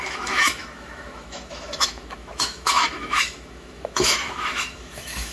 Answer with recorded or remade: remade